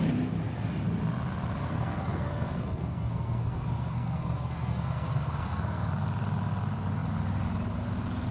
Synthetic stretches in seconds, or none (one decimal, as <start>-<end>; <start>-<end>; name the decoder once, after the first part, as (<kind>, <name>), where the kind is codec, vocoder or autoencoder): 1.6-5.9 (codec, SNAC)